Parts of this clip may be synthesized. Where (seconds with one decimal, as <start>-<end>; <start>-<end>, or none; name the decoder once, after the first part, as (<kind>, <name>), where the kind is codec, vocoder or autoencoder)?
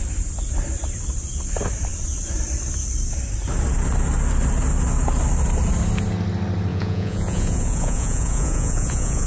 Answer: 6.7-9.3 (vocoder, Vocos)